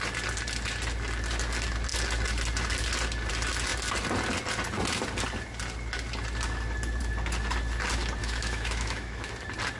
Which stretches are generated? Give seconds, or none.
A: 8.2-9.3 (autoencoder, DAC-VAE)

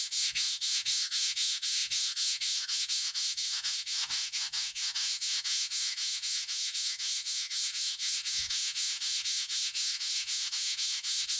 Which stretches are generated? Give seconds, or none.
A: 0.0-11.4 (autoencoder, DAC-VAE)

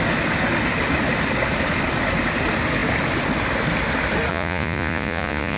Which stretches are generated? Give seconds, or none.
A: 4.3-5.6 (vocoder, Vocos)